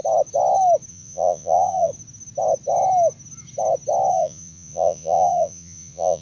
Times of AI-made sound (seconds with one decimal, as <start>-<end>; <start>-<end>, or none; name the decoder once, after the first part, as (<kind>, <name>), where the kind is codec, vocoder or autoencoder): 0.9-1.9 (vocoder, Vocos); 4.1-6.2